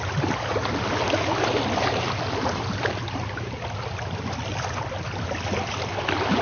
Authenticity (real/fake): real